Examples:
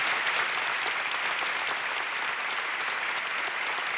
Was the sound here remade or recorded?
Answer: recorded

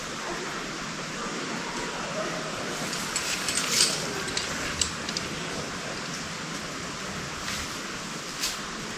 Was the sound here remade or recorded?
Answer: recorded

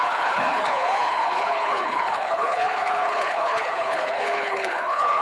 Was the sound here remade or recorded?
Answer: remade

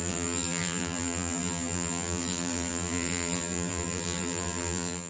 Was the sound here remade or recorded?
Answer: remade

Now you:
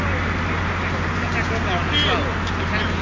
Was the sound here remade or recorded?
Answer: recorded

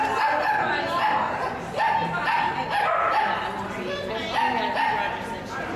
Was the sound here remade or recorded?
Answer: recorded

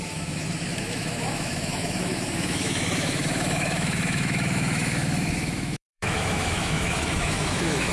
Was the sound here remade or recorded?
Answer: remade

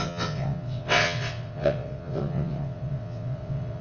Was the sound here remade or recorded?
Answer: remade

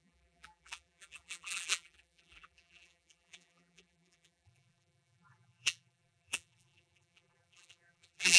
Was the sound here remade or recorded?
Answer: remade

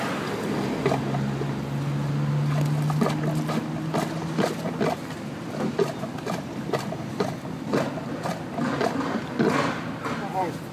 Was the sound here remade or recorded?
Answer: recorded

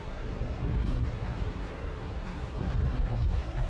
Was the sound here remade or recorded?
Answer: remade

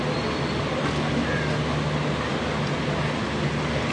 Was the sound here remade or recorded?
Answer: recorded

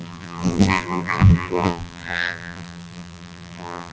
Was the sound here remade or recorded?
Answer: remade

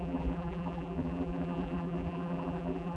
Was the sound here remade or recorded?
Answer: remade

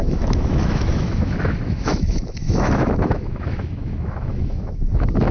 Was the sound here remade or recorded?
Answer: remade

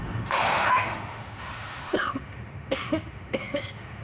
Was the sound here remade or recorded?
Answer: remade